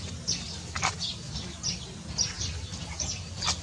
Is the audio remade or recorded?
remade